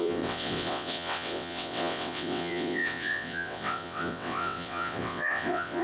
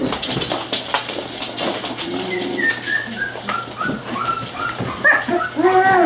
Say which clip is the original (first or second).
second